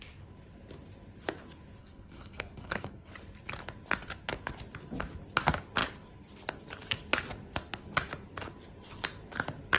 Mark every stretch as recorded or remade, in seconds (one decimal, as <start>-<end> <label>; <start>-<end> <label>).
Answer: 0.0-1.8 recorded; 1.8-3.1 remade; 3.1-9.8 recorded